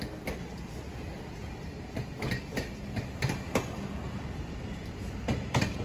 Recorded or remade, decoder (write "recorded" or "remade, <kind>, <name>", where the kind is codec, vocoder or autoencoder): recorded